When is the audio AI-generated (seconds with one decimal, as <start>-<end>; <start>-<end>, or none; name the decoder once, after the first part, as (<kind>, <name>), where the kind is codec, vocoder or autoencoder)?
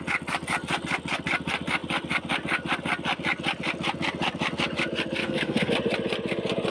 5.2-5.7 (codec, SNAC)